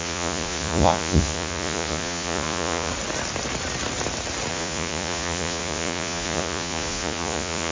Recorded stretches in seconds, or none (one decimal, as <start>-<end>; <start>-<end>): 2.9-4.5